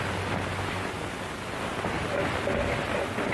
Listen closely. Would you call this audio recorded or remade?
recorded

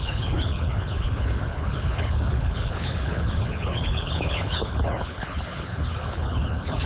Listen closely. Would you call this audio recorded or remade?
remade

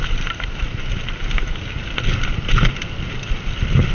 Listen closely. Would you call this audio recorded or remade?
recorded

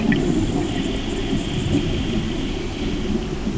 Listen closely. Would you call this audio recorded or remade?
recorded